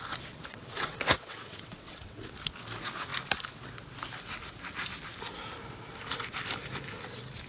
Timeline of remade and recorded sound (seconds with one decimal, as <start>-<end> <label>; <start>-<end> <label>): 0.0-0.5 recorded; 0.5-2.3 remade; 2.3-7.5 recorded